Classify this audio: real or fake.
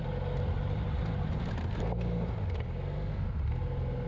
real